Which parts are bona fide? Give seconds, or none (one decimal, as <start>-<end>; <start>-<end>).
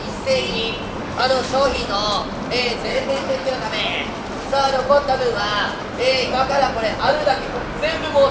0.0-1.0; 1.9-2.9; 3.5-8.3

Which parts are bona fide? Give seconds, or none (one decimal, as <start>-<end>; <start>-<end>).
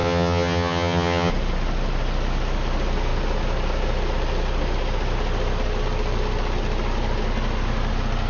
1.3-8.3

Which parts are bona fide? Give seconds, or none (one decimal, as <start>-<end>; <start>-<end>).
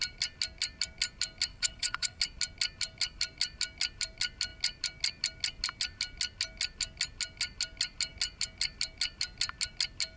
0.0-1.5; 2.2-10.2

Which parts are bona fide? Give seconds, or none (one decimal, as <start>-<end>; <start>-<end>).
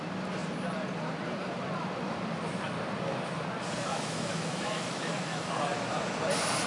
0.0-3.9; 5.5-6.7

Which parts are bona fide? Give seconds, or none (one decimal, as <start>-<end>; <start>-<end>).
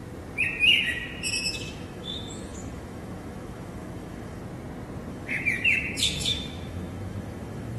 0.0-0.6; 1.0-1.5; 4.4-5.1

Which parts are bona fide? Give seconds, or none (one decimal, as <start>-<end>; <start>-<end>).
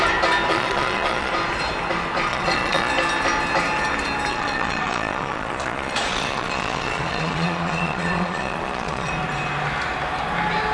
0.0-0.5; 1.3-2.3; 2.9-4.3; 9.1-10.7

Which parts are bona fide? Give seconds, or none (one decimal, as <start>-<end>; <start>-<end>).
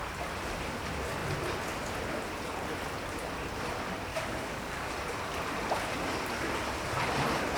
0.0-4.1; 4.9-7.6